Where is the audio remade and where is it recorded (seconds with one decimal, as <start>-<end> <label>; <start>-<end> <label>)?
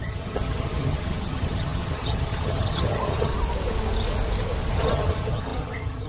0.0-3.3 remade; 3.3-4.7 recorded; 4.7-6.1 remade